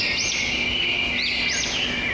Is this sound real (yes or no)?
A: yes